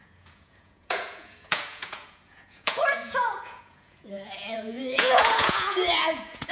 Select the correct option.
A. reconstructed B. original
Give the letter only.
A